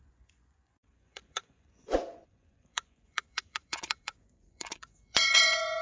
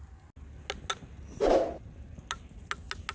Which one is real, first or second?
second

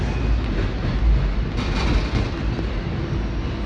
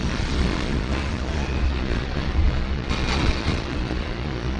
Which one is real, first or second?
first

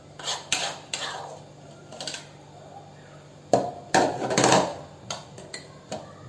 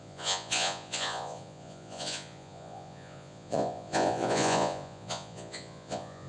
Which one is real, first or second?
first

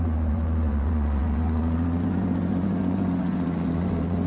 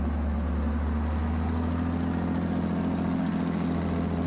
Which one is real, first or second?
second